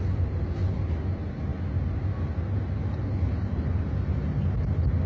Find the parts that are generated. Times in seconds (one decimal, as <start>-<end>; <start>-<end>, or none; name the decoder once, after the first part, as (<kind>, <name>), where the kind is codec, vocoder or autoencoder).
none